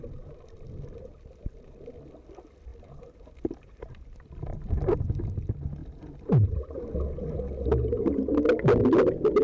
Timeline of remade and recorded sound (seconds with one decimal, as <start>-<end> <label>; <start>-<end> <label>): 0.0-2.7 recorded; 2.7-4.7 remade; 4.7-5.8 recorded; 5.8-6.7 remade; 6.7-9.4 recorded